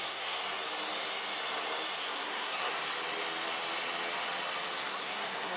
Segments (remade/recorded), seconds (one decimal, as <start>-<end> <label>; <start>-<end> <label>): 0.0-0.4 remade; 0.4-2.0 recorded; 2.0-2.7 remade; 2.7-4.8 recorded; 4.8-5.6 remade